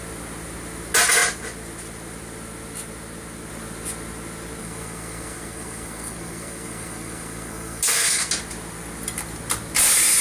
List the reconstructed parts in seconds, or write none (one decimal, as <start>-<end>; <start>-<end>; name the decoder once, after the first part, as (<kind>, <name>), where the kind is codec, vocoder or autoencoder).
4.6-8.3 (codec, SNAC)